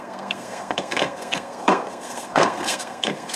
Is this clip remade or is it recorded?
remade